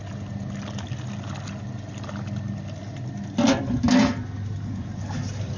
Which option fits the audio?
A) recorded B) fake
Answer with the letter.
A